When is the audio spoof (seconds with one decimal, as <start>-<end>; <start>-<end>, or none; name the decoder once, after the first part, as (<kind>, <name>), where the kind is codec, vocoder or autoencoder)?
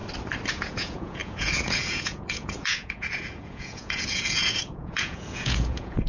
0.5-6.1 (vocoder, Vocos)